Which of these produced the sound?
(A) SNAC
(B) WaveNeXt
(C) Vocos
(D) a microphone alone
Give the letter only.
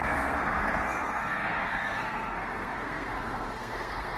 A